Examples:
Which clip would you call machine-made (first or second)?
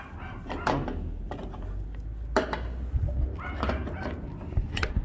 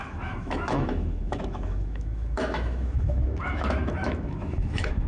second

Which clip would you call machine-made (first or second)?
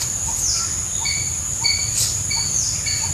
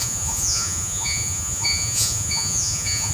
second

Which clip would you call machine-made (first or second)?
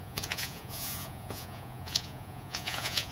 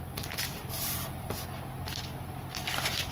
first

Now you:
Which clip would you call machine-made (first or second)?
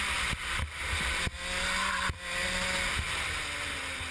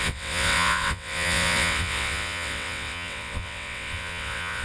second